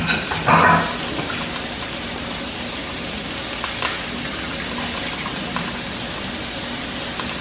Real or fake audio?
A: real